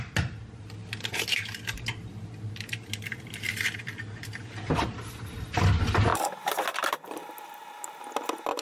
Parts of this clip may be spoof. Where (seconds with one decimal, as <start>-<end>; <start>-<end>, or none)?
0.6-4.4